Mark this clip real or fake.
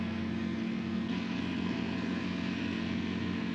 fake